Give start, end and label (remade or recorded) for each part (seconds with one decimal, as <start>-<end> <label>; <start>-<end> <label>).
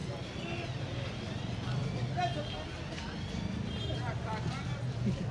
0.0-0.8 recorded; 0.8-1.8 remade; 1.8-5.3 recorded